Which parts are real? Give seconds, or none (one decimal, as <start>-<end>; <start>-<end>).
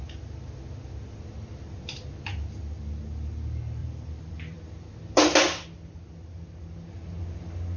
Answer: 0.0-3.8; 4.8-7.8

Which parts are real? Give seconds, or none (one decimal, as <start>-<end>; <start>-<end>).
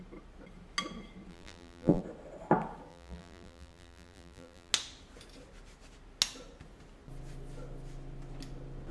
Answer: 0.0-1.3; 2.0-2.9; 4.7-8.9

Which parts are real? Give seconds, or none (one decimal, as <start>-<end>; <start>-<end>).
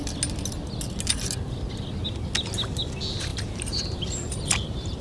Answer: 0.0-3.3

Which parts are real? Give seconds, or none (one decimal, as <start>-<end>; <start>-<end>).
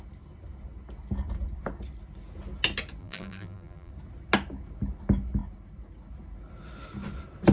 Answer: 0.0-3.0; 3.9-7.5